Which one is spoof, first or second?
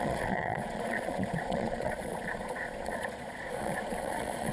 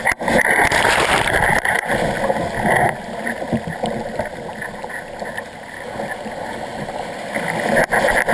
first